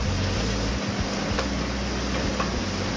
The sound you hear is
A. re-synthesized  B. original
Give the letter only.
B